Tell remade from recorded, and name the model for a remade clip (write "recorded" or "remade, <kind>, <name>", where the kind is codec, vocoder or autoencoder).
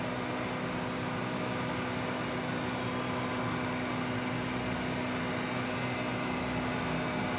recorded